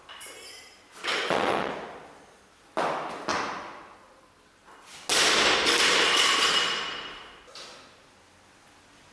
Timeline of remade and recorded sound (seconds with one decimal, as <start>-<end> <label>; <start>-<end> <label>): 0.0-1.0 recorded; 1.0-1.7 remade; 1.7-9.1 recorded